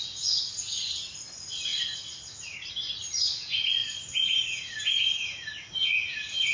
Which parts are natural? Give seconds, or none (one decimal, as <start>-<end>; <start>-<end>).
0.0-6.5